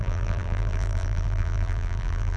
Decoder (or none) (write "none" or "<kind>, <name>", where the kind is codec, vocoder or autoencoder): vocoder, BigVGAN v2